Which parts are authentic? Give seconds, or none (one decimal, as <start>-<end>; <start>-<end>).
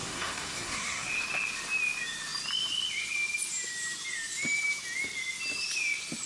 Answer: 1.1-6.3